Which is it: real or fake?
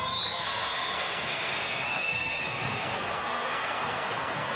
fake